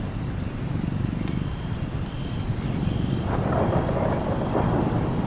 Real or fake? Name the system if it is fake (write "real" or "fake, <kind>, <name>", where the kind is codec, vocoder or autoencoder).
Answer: real